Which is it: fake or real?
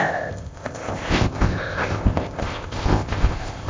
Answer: fake